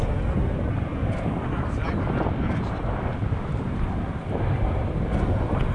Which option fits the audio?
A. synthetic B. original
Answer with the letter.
B